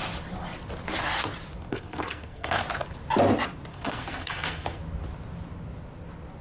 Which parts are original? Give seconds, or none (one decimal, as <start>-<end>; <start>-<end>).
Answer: 0.0-1.7; 2.6-3.7; 4.8-6.4